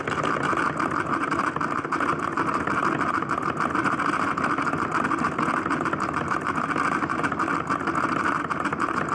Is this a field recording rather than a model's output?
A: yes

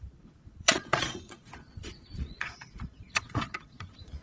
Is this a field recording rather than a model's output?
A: no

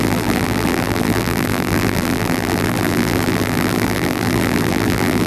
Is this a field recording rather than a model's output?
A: no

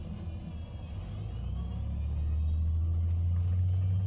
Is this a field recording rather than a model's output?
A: yes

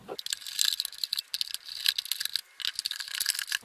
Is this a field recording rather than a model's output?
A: yes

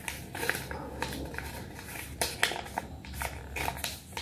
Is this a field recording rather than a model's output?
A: yes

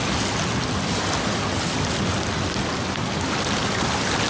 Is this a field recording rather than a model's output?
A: yes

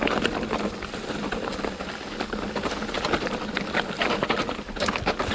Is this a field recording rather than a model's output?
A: yes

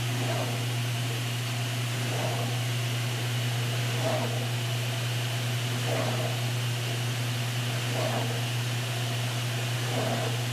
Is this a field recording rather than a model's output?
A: yes